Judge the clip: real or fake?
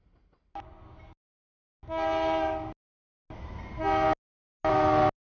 real